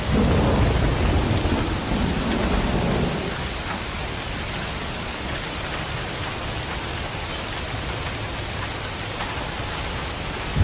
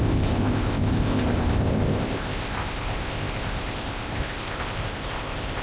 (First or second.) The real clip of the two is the first